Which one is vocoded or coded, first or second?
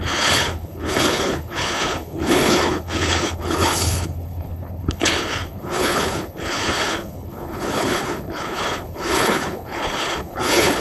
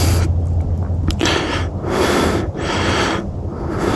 first